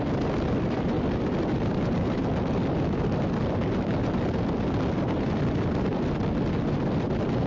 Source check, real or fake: real